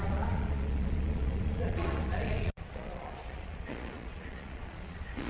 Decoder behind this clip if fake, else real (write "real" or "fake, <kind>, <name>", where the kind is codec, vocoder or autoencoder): fake, vocoder, Vocos